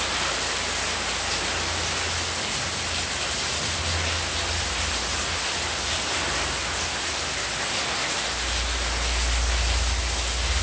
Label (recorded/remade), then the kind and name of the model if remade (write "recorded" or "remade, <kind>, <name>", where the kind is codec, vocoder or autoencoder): recorded